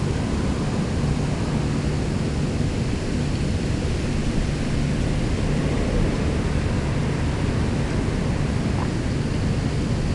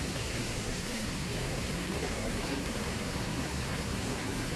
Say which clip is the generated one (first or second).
second